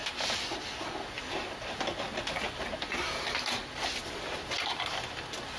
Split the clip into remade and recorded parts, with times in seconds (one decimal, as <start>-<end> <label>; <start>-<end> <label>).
0.0-5.6 recorded

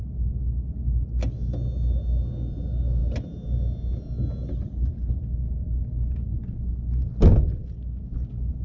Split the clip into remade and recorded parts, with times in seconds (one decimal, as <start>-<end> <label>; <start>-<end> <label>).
0.0-8.6 recorded

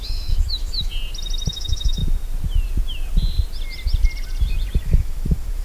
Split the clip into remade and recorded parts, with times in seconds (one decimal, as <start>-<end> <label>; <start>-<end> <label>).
0.0-0.9 remade; 0.9-1.5 recorded; 1.5-2.0 remade; 2.0-4.8 recorded; 4.8-5.6 remade

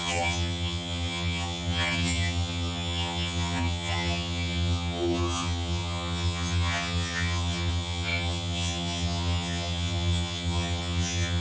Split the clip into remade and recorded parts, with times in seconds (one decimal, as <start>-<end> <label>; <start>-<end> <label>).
0.0-11.4 remade

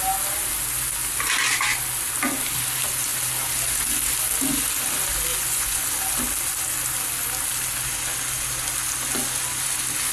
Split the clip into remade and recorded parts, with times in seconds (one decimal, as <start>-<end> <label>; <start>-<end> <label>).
0.0-5.3 recorded; 5.3-5.8 remade; 5.8-10.1 recorded

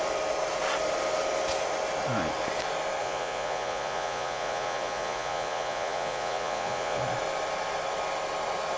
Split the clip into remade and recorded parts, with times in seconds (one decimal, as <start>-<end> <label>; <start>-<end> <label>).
0.0-3.0 recorded; 3.0-7.0 remade; 7.0-8.8 recorded

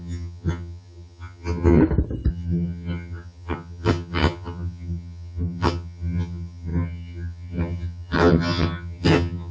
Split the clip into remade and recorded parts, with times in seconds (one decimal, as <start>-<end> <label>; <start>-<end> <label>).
0.0-1.8 remade; 1.8-2.3 recorded; 2.3-9.5 remade

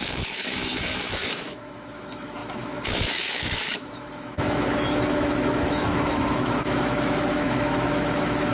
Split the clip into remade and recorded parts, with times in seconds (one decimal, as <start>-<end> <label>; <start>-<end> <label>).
0.0-8.5 remade